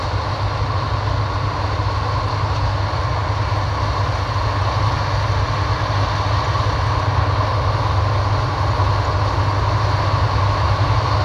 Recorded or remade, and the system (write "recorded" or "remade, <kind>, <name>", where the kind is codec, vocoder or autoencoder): recorded